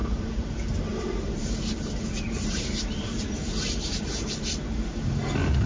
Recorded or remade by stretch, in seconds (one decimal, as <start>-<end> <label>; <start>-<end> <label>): 0.0-0.5 remade; 0.5-0.9 recorded; 0.9-4.3 remade; 4.3-5.7 recorded